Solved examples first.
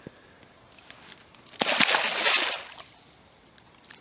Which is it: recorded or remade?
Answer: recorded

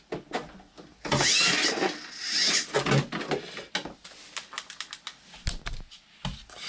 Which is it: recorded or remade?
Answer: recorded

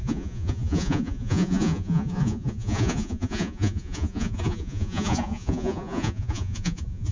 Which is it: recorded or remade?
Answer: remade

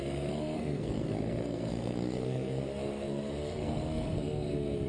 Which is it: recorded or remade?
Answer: remade